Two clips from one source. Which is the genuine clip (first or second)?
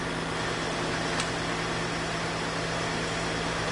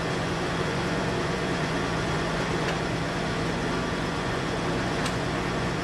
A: first